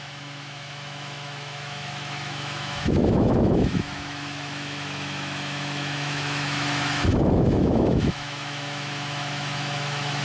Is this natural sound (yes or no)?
no